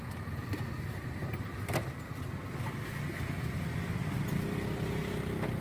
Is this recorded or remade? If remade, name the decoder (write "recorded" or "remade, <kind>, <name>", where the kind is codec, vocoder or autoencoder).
recorded